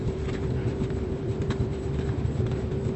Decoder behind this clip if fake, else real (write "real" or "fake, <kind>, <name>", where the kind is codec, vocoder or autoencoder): fake, vocoder, BigVGAN v2